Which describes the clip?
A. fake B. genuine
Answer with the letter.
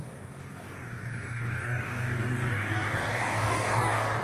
A